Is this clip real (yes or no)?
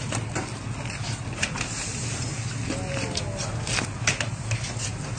yes